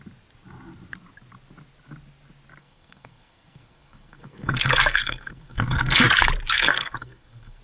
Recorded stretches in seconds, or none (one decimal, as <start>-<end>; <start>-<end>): 0.0-2.6; 6.1-6.5